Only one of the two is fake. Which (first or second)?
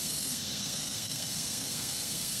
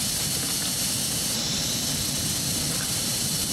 first